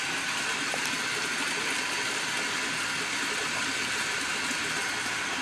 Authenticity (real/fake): real